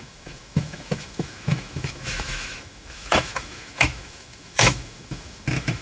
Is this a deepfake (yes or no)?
yes